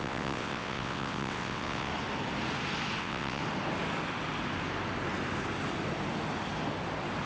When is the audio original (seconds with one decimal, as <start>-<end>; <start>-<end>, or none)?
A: 1.9-3.0; 3.4-7.3